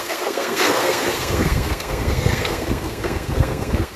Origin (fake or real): fake